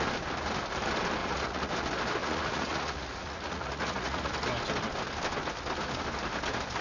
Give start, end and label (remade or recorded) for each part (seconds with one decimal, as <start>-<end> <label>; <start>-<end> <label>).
0.0-1.2 recorded; 1.2-1.7 remade; 1.7-2.2 recorded; 2.2-4.3 remade; 4.3-6.8 recorded